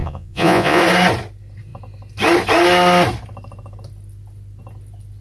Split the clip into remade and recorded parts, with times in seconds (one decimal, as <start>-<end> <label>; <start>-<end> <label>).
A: 0.0-0.8 remade; 0.8-5.2 recorded